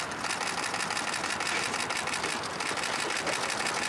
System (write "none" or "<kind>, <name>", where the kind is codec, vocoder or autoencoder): none